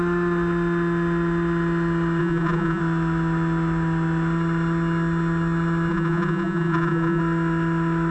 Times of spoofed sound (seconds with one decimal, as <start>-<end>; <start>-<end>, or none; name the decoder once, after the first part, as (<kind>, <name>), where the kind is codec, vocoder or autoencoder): 2.2-2.8 (vocoder, Vocos); 5.9-7.2